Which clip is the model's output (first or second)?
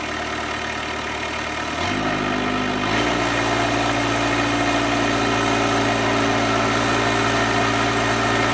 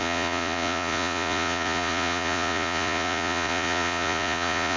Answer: second